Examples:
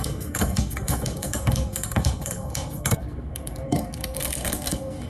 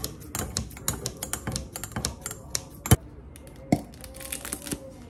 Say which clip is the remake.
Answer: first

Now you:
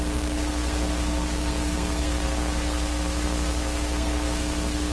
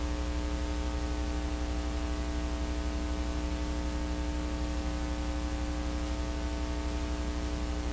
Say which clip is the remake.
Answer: first